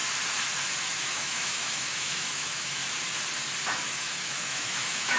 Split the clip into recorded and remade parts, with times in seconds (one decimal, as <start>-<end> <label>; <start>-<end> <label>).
0.0-0.8 recorded; 0.8-2.8 remade; 2.8-3.7 recorded; 3.7-5.2 remade